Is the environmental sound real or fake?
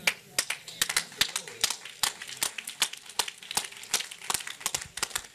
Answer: real